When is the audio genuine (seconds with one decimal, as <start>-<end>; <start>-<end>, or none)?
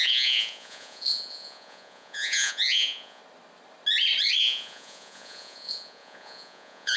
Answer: 3.2-4.4